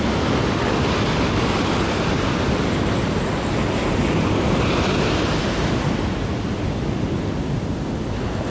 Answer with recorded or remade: recorded